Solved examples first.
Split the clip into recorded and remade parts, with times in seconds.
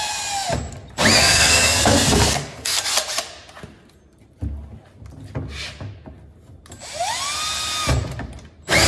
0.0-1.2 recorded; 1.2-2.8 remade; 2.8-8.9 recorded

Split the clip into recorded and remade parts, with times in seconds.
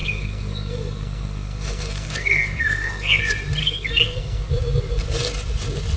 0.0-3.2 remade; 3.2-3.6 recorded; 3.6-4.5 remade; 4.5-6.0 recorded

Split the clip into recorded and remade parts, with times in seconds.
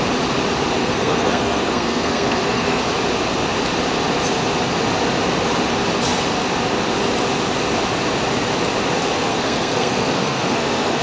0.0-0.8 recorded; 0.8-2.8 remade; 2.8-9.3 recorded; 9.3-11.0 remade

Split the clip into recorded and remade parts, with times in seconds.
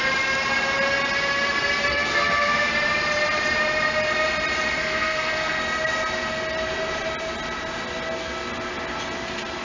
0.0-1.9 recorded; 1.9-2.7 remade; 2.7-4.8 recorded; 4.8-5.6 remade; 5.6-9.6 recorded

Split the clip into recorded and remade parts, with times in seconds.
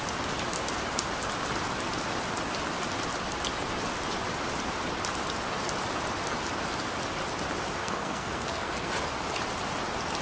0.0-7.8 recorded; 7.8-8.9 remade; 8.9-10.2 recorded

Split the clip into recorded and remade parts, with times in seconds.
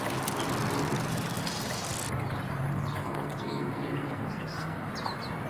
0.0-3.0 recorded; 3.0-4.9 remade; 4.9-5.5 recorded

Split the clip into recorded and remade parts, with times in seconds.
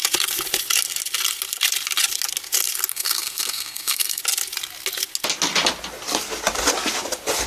0.0-2.9 recorded; 2.9-4.2 remade; 4.2-7.5 recorded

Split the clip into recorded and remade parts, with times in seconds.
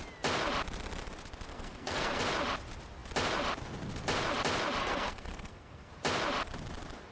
0.0-1.5 recorded; 1.5-2.2 remade; 2.2-4.8 recorded; 4.8-5.9 remade; 5.9-7.1 recorded